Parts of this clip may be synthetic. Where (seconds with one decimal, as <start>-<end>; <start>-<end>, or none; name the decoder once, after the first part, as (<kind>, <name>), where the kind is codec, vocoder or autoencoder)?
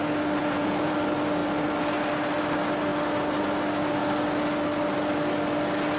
0.4-0.9 (vocoder, Vocos)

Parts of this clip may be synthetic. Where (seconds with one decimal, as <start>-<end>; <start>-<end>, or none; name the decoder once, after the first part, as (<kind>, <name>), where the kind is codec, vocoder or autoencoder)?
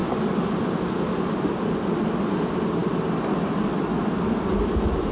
none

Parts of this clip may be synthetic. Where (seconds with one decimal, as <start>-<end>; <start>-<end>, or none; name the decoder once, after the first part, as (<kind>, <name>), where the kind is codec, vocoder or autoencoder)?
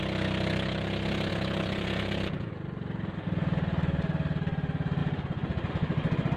1.3-2.5 (vocoder, Vocos)